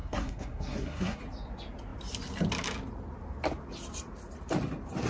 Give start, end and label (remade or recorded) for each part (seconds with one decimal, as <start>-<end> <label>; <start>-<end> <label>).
0.0-1.2 remade; 1.2-5.1 recorded